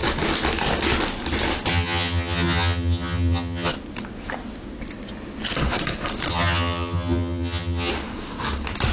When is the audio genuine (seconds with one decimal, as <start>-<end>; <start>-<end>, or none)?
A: 0.0-1.7; 3.7-6.3; 7.9-8.9